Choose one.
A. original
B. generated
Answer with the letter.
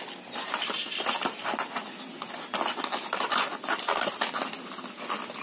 A